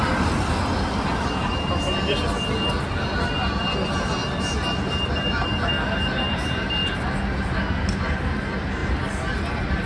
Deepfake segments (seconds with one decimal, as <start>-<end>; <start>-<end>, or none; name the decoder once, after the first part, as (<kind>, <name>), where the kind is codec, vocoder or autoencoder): none